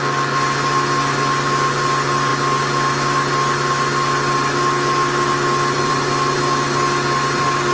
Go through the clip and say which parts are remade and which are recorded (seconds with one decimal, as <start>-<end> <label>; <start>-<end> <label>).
0.0-7.7 recorded

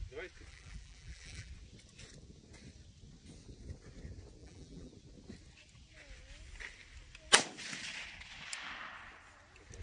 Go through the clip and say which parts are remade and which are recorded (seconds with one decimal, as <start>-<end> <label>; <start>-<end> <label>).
0.0-0.5 recorded; 0.5-1.5 remade; 1.5-4.4 recorded; 4.4-4.9 remade; 4.9-9.8 recorded

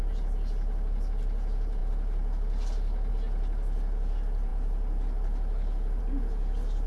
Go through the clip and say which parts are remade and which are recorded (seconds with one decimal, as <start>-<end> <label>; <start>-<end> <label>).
0.0-6.9 recorded

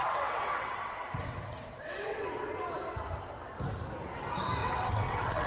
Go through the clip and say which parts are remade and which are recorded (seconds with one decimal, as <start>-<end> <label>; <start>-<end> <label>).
0.0-2.5 remade; 2.5-4.6 recorded; 4.6-5.5 remade

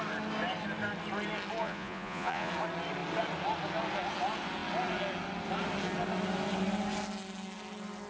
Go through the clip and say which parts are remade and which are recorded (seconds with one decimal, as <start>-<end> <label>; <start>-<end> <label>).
0.0-1.6 recorded; 1.6-2.5 remade; 2.5-8.1 recorded